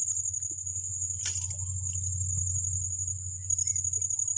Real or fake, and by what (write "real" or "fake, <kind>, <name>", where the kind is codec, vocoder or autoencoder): real